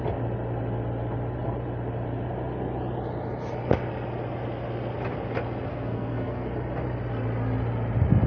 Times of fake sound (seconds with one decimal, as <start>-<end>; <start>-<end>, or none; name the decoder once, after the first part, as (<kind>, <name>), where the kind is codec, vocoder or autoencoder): 5.7-6.5 (codec, SNAC)